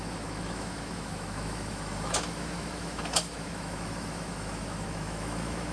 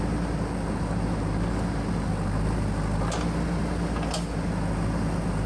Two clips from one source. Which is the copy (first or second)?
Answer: first